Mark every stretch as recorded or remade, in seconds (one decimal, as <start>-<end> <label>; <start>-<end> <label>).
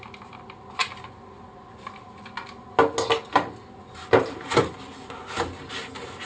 0.0-6.3 recorded